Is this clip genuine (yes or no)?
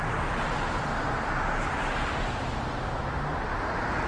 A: yes